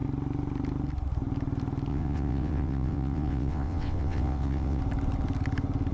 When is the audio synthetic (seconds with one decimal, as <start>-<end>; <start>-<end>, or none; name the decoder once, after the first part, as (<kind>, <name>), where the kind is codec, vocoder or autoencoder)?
1.9-4.8 (vocoder, WaveNeXt)